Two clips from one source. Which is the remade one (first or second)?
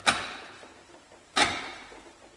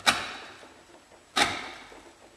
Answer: first